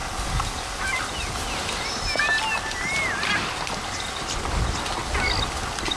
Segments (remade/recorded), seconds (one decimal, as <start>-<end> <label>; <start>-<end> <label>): 0.0-6.0 recorded